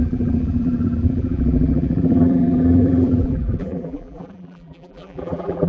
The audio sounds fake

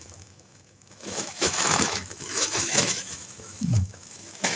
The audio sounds fake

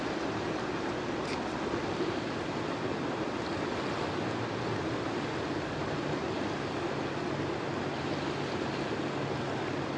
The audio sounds real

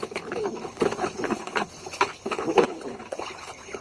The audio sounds fake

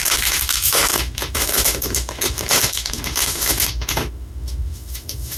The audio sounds fake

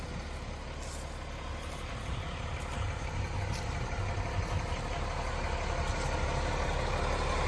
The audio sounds real